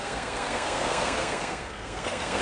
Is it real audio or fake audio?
fake